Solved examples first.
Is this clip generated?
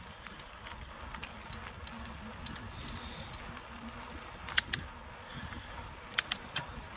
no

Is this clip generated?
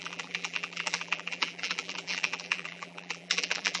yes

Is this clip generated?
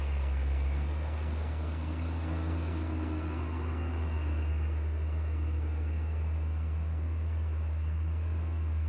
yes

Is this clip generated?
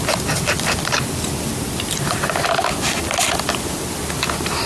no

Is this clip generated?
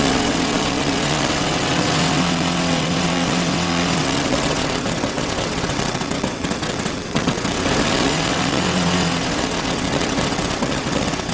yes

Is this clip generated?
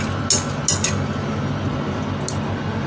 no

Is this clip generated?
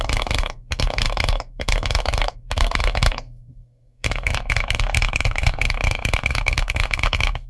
yes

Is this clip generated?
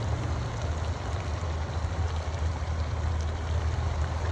no